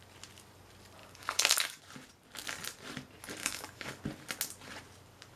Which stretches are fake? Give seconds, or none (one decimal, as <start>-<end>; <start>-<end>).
1.0-1.8; 3.4-4.0